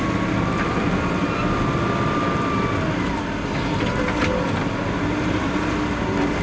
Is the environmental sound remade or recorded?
recorded